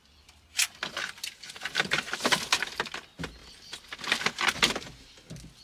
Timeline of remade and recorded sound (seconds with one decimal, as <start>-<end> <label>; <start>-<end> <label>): 0.0-5.6 recorded